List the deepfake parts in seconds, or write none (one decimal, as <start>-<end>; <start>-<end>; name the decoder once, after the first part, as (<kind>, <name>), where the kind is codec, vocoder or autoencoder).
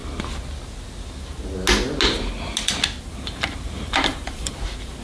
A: 3.0-5.0 (vocoder, BigVGAN v2)